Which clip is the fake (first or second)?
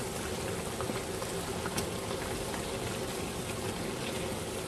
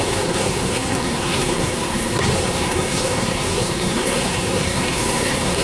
second